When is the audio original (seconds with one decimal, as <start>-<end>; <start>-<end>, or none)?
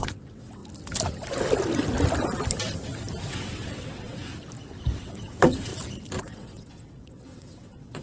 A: 0.6-3.3; 4.3-5.0; 5.7-6.2